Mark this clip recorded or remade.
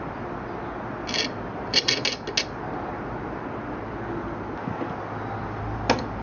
recorded